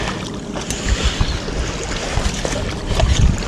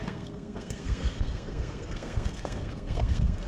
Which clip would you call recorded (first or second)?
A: first